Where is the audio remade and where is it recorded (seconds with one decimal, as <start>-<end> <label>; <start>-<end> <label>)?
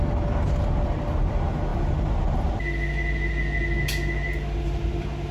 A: 0.0-5.3 recorded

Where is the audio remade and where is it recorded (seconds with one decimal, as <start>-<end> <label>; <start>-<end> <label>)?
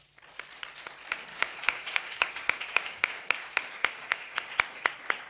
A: 0.0-1.3 recorded; 1.3-4.5 remade; 4.5-5.3 recorded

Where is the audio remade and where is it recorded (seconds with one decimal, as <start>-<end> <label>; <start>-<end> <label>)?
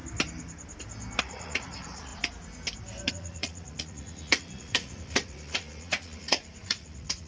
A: 0.0-1.2 recorded; 1.2-2.1 remade; 2.1-3.1 recorded; 3.1-7.3 remade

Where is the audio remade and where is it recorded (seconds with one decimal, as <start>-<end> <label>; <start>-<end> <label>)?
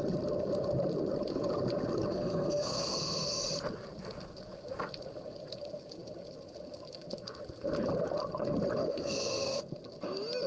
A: 0.0-2.1 recorded; 2.1-3.0 remade; 3.0-8.8 recorded; 8.8-9.6 remade; 9.6-10.5 recorded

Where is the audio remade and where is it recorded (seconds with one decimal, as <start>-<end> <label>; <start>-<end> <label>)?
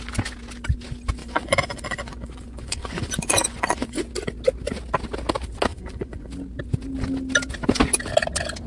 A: 0.0-1.2 recorded; 1.2-4.0 remade; 4.0-5.7 recorded; 5.7-6.3 remade; 6.3-8.7 recorded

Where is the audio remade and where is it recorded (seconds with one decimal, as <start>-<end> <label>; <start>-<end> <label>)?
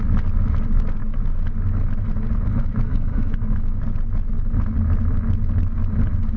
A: 0.0-2.9 recorded; 2.9-3.8 remade; 3.8-6.4 recorded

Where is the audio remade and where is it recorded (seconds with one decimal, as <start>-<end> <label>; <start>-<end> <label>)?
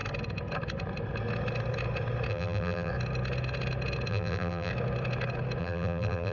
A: 0.0-2.3 recorded; 2.3-2.9 remade; 2.9-4.1 recorded; 4.1-4.7 remade; 4.7-5.6 recorded; 5.6-6.3 remade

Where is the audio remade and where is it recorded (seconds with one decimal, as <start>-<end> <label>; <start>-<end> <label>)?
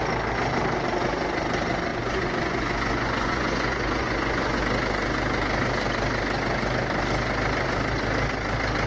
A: 0.0-1.9 recorded; 1.9-4.6 remade; 4.6-8.9 recorded